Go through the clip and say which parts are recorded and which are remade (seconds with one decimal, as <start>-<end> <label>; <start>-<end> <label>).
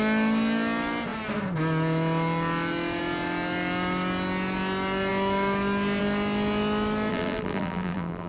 0.0-7.1 recorded; 7.1-8.3 remade